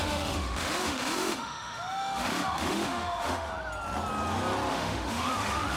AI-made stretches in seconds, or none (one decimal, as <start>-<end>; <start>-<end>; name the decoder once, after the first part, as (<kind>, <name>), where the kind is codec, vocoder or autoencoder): 0.0-3.5 (autoencoder, DAC-VAE); 4.7-5.8